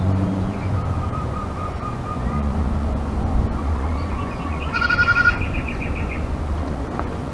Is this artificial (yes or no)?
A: yes